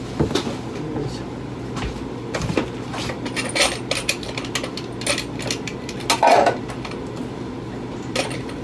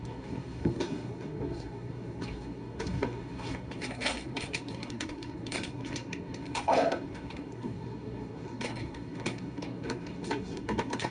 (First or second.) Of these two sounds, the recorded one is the first